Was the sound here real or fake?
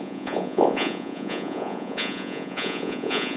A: fake